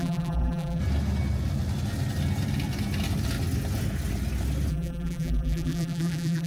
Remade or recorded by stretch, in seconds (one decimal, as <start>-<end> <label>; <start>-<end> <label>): 0.0-0.8 remade; 0.8-4.7 recorded; 4.7-6.5 remade